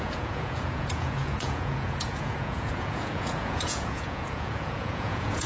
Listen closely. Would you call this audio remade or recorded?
remade